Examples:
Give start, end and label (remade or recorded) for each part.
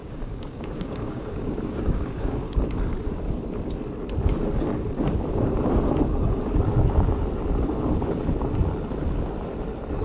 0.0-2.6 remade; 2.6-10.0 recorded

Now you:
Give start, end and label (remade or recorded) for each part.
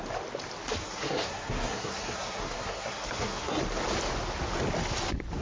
0.0-0.8 recorded; 0.8-3.6 remade; 3.6-5.4 recorded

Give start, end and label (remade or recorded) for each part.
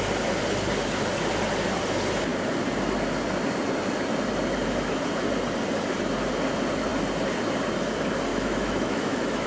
0.0-8.3 recorded; 8.3-9.5 remade